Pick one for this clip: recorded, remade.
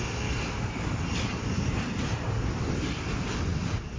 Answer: remade